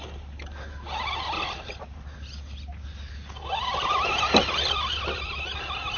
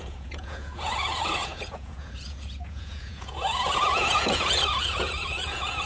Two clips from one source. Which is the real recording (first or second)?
first